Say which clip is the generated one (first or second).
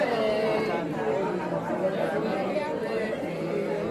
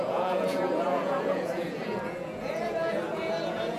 second